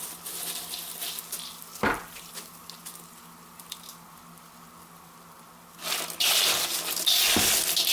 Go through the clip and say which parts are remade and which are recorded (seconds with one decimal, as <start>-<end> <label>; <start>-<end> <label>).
0.0-7.9 recorded